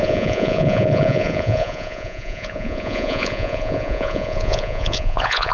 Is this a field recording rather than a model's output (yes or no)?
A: no